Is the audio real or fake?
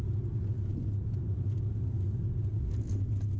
real